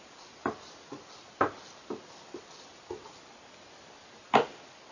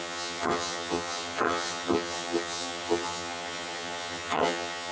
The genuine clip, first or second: first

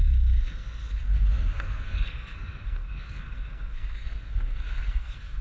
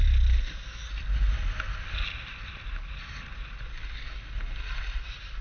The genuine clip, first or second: second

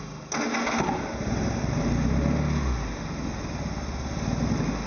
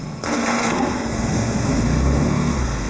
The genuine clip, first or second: first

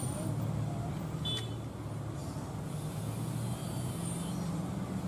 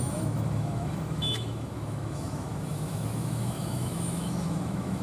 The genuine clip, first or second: first